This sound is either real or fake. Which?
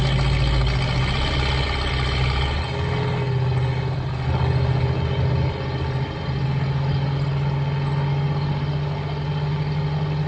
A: real